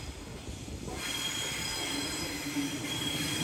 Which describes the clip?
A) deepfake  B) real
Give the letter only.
B